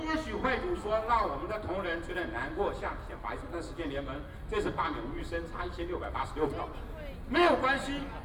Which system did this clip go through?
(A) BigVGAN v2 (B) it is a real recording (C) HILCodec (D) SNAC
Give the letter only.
B